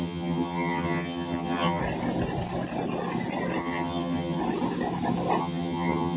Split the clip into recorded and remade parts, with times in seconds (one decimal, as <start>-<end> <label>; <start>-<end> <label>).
0.0-1.8 remade; 1.8-3.6 recorded; 3.6-4.4 remade; 4.4-5.4 recorded; 5.4-6.2 remade